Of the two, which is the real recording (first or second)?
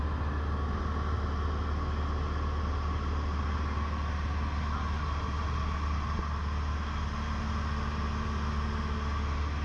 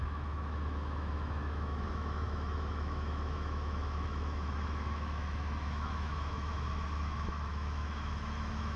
first